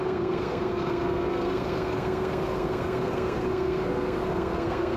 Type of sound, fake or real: fake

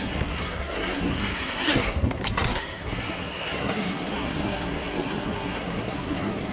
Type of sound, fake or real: fake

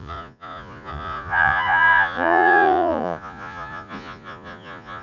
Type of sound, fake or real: fake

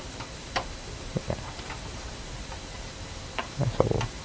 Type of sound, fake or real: real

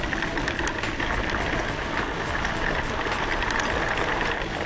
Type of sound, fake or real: real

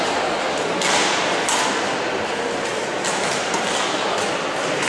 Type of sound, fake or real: real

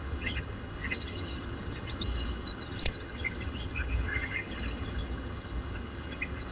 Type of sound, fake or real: fake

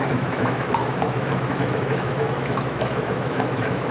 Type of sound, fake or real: fake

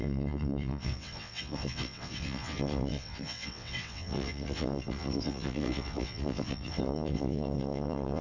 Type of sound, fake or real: fake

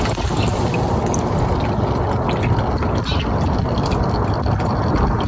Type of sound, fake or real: real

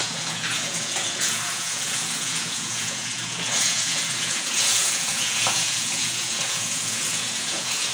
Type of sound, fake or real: fake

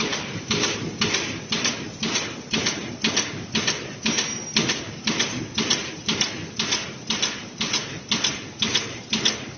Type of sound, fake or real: real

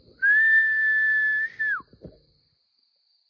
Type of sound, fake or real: real